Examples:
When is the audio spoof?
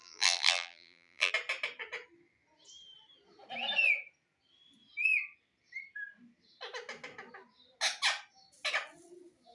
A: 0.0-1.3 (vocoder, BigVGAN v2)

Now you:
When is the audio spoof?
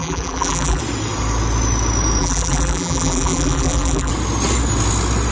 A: 0.0-0.8 (vocoder, BigVGAN v2); 2.2-4.1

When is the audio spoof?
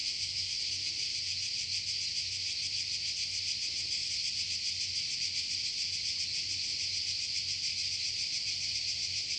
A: 0.0-0.6 (autoencoder, DAC-VAE)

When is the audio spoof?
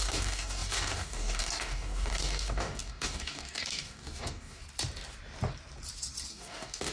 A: 0.0-4.6 (codec, DAC); 6.3-6.9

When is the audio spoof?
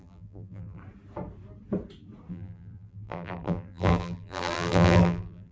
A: 0.0-0.8 (vocoder, BigVGAN v2); 2.3-5.5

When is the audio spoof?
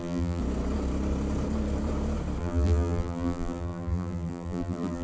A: 0.0-0.4 (vocoder, BigVGAN v2); 2.4-5.0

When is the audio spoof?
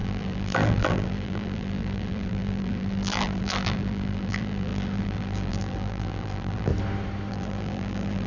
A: 0.0-6.7 (vocoder, BigVGAN v2); 7.3-8.3